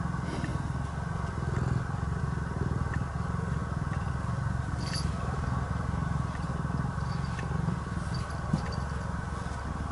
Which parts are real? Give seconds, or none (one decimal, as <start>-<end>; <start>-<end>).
0.0-9.9